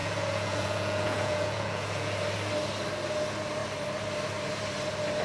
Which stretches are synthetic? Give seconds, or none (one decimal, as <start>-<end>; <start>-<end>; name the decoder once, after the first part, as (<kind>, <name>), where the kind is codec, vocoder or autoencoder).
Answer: 0.0-2.2 (vocoder, Vocos)